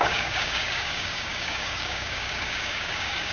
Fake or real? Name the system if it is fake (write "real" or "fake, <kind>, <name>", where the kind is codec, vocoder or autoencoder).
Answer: fake, codec, DAC